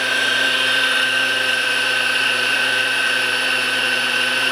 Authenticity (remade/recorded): remade